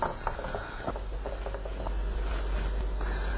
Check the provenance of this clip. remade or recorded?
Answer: recorded